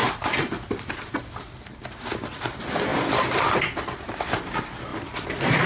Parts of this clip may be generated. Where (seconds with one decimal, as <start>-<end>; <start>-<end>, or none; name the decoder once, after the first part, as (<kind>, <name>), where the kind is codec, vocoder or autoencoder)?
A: 0.0-1.8 (vocoder, BigVGAN v2); 2.9-4.0; 4.9-5.7